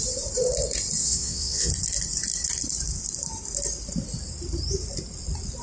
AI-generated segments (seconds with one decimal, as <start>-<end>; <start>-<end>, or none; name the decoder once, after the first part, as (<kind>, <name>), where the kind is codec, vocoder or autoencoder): 1.0-1.7 (vocoder, WaveNeXt)